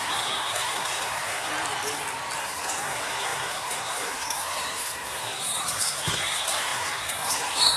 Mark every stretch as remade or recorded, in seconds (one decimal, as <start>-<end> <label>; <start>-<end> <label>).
0.0-1.5 remade; 1.5-2.4 recorded; 2.4-7.8 remade